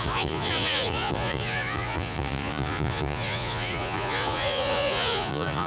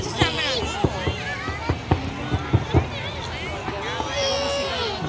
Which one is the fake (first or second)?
first